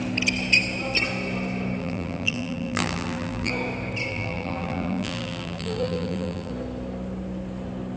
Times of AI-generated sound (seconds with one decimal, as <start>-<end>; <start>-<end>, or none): 1.8-3.5; 4.1-6.5